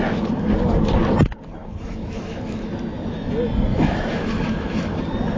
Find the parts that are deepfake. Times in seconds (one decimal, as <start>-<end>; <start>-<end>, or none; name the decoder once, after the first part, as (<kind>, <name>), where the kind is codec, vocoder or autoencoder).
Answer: 1.6-2.7 (autoencoder, DAC-VAE); 3.7-5.0